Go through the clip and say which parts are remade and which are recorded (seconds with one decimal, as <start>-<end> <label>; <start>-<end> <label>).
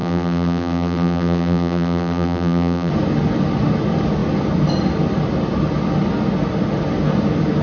0.0-2.9 remade; 2.9-7.6 recorded